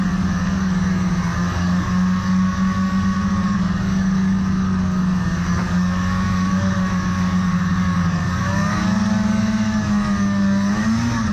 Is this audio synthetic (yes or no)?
yes